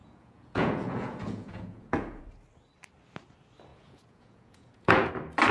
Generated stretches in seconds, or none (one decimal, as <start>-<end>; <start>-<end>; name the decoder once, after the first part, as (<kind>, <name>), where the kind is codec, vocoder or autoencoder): 0.0-2.2 (vocoder, Vocos); 3.7-5.1